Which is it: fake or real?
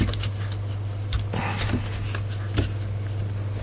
real